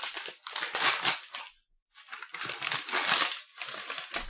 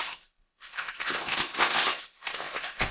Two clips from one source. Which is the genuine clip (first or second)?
first